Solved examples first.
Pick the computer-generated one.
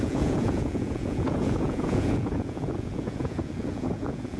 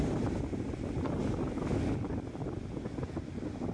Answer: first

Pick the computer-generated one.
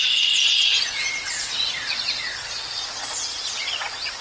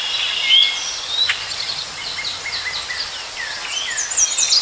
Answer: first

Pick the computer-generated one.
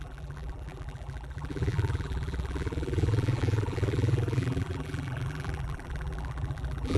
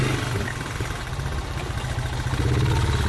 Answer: first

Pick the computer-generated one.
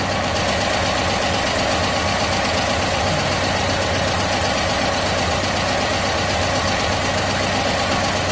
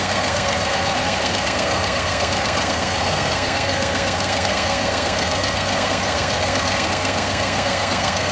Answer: second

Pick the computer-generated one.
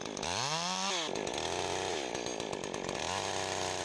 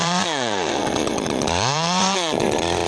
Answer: second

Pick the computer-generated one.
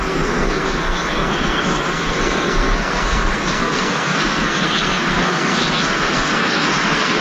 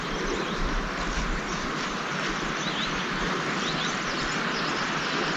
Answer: first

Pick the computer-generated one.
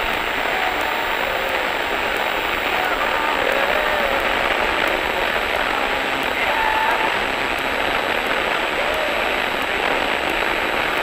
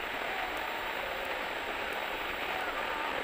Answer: second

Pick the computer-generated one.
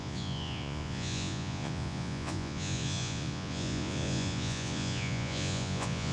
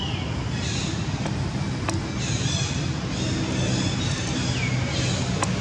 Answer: first